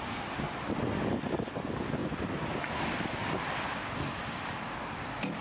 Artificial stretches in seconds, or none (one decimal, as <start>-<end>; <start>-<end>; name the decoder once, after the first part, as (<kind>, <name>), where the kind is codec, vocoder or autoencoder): none